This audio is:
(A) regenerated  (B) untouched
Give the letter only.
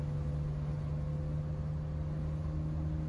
B